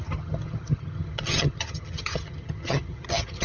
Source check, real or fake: fake